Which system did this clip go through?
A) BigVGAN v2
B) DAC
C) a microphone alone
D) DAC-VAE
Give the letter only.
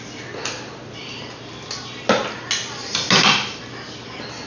C